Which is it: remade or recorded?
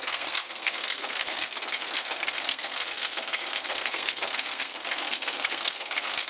remade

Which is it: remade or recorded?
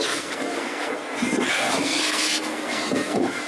remade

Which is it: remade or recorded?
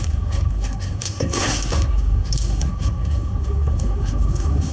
remade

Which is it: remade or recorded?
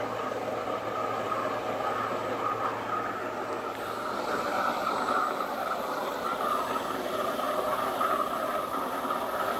recorded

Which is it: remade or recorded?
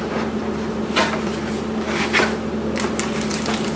recorded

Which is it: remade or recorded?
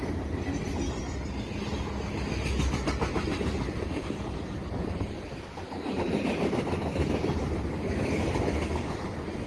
recorded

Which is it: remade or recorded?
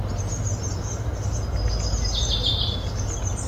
recorded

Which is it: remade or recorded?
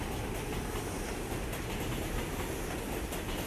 recorded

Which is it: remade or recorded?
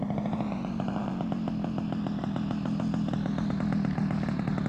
recorded